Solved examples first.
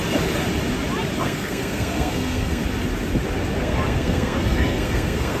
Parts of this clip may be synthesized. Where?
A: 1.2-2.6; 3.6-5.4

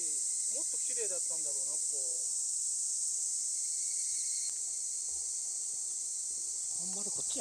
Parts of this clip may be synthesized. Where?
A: 2.1-4.8